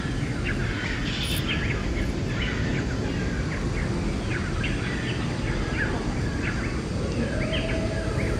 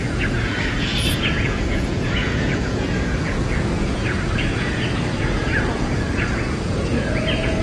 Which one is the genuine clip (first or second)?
first